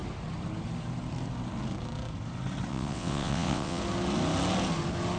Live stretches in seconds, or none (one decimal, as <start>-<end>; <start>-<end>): 0.0-2.7; 3.8-5.2